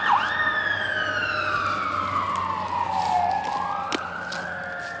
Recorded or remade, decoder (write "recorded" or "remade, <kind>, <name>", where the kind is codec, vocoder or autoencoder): recorded